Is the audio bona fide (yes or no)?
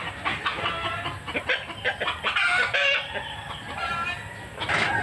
yes